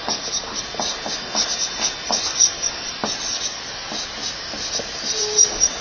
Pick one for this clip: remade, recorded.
recorded